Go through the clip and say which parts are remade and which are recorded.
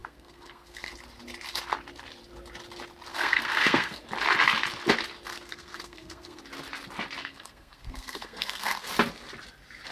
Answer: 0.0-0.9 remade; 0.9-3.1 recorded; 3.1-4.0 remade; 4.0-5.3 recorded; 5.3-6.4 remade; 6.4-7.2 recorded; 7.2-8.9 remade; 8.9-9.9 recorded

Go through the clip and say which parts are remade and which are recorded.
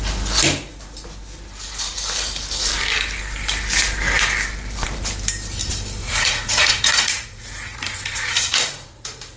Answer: 0.0-6.0 recorded; 6.0-9.4 remade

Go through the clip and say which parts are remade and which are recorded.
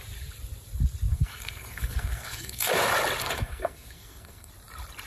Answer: 0.0-1.1 recorded; 1.1-2.7 remade; 2.7-3.2 recorded; 3.2-4.5 remade; 4.5-5.1 recorded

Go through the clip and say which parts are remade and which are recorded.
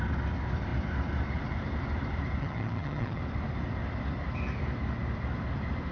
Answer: 0.0-2.4 recorded; 2.4-3.2 remade; 3.2-5.9 recorded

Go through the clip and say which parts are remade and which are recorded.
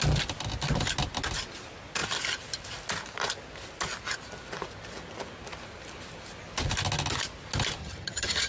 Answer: 0.0-7.8 recorded; 7.8-8.5 remade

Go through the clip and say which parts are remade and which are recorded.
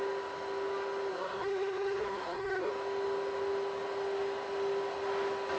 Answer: 0.0-1.1 recorded; 1.1-2.7 remade; 2.7-5.6 recorded